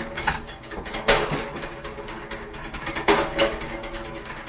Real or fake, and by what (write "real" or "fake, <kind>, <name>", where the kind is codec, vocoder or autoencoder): fake, codec, DAC